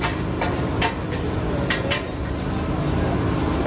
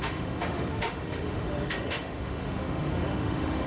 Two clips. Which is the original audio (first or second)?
first